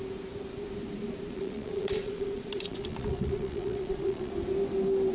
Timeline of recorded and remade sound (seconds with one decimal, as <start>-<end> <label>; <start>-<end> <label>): 0.0-1.3 recorded; 1.3-4.3 remade; 4.3-5.1 recorded